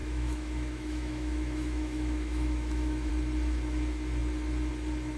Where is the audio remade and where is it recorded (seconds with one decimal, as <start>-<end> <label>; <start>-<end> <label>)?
0.0-3.1 remade; 3.1-5.2 recorded